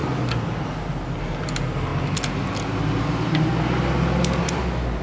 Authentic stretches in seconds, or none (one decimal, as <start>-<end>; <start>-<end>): 0.0-5.0

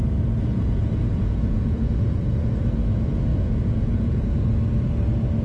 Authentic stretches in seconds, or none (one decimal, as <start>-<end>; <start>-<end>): 0.0-0.5; 2.5-3.3; 4.3-5.4

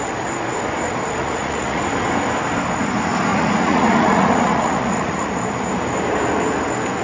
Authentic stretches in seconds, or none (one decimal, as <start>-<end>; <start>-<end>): 0.0-1.2; 1.8-3.3; 5.3-7.0

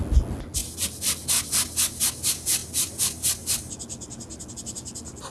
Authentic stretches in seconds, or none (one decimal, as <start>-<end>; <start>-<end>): 0.0-5.3

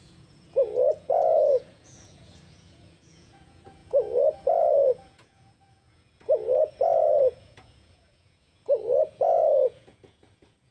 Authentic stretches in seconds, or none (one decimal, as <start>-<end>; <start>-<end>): none